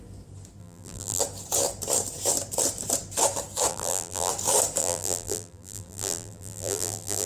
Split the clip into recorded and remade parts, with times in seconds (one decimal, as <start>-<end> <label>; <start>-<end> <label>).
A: 0.0-0.6 recorded; 0.6-1.2 remade; 1.2-3.7 recorded; 3.7-4.3 remade; 4.3-4.8 recorded; 4.8-7.3 remade